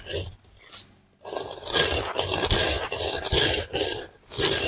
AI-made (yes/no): no